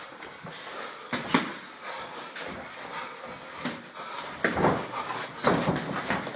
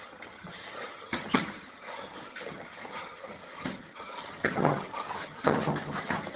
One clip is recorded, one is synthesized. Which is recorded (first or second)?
first